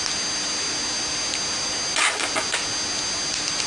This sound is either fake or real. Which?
real